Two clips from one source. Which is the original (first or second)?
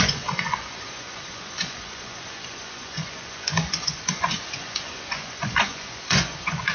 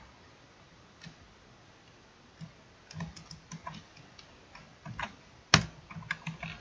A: second